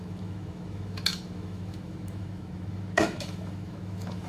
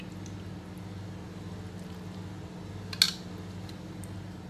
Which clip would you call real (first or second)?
second